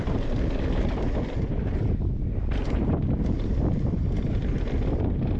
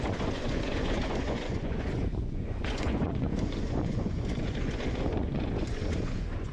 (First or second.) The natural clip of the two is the first